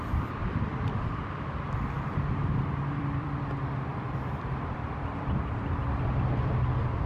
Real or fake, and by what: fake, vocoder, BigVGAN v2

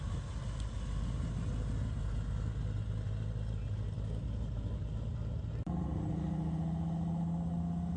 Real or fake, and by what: real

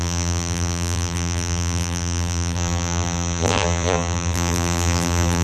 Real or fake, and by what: fake, vocoder, BigVGAN v2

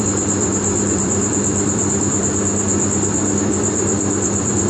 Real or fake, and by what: fake, vocoder, BigVGAN v2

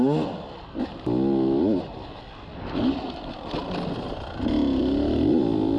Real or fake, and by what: real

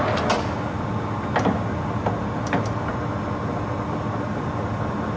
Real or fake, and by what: real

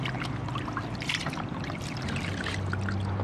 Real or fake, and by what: real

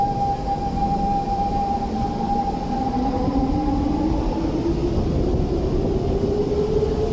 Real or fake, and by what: real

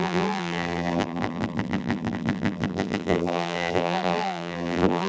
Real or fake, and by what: fake, vocoder, BigVGAN v2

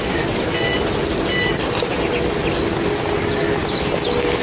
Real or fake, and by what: real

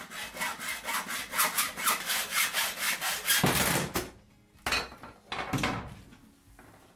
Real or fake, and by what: real